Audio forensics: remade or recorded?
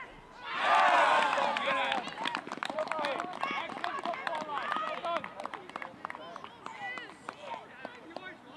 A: recorded